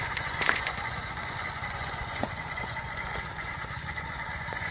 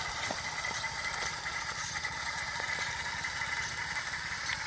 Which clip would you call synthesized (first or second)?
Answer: first